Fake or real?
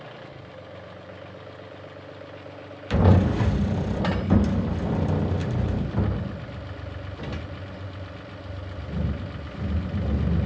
real